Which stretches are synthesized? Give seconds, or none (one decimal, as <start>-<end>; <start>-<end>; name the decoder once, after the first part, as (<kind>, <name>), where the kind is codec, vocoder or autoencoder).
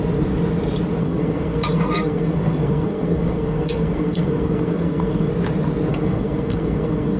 1.0-5.3 (codec, SNAC); 5.9-7.2